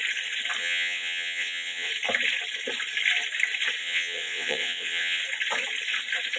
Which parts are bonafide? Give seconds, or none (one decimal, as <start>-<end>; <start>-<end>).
0.0-0.6; 1.9-3.8; 5.2-6.4